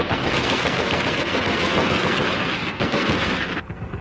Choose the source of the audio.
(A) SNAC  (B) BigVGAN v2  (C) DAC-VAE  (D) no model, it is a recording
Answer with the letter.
A